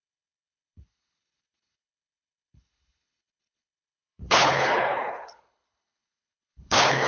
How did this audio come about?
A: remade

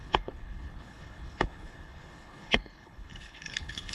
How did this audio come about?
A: remade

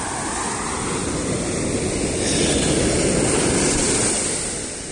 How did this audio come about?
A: recorded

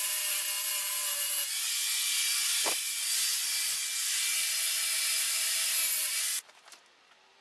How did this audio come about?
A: recorded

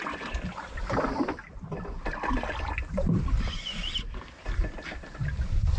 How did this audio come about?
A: recorded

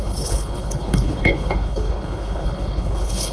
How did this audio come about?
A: remade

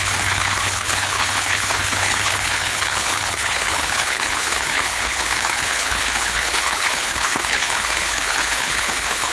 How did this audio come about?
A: remade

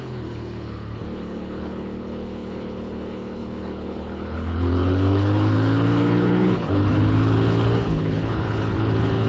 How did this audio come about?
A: remade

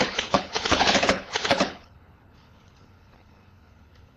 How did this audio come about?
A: remade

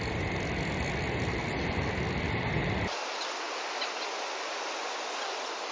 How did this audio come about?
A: recorded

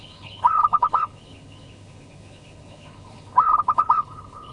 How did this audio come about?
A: remade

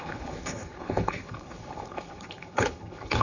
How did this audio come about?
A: remade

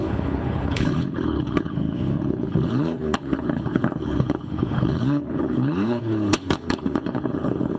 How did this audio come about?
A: remade